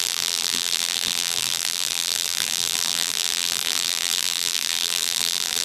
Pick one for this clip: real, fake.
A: fake